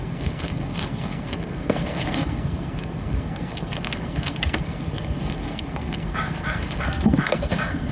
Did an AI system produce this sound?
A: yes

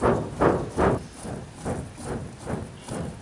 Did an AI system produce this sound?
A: no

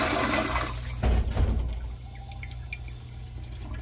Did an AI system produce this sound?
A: no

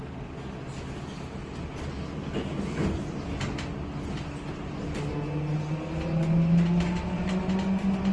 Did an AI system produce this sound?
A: no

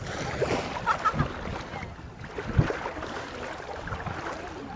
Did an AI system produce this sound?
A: no